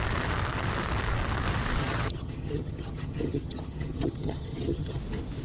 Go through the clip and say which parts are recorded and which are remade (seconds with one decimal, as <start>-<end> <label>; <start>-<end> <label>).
0.0-1.8 recorded; 1.8-5.0 remade; 5.0-5.4 recorded

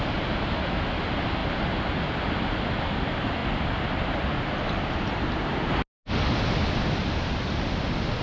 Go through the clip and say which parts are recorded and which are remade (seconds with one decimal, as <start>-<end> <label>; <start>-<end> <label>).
0.0-8.2 recorded

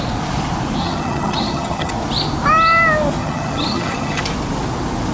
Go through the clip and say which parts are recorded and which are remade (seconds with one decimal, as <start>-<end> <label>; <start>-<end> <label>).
0.0-0.8 recorded; 0.8-1.9 remade; 1.9-3.2 recorded; 3.2-4.2 remade; 4.2-5.1 recorded

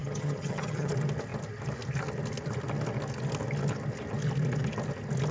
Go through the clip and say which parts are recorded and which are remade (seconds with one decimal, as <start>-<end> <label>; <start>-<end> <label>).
0.0-0.9 remade; 0.9-5.3 recorded

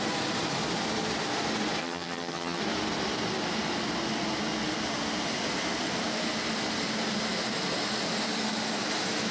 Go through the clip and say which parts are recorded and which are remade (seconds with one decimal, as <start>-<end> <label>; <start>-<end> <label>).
0.0-1.8 recorded; 1.8-2.6 remade; 2.6-9.3 recorded